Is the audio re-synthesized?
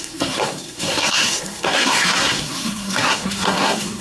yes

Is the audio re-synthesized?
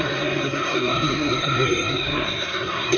yes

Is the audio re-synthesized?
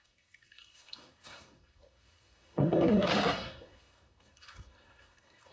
yes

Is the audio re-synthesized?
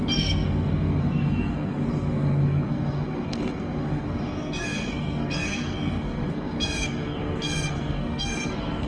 yes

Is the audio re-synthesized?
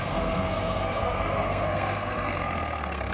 yes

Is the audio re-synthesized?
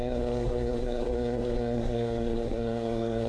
yes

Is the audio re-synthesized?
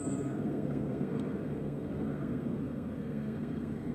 yes